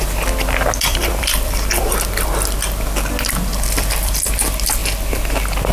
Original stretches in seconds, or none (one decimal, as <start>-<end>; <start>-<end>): 0.0-0.9; 1.9-3.5; 4.3-5.7